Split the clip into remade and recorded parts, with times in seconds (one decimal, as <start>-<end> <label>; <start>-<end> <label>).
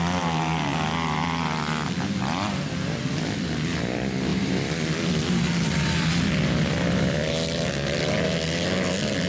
0.0-9.3 recorded